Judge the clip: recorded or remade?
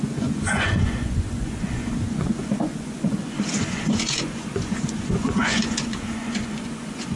remade